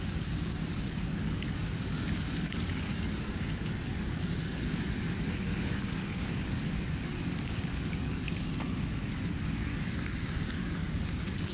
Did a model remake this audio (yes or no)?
yes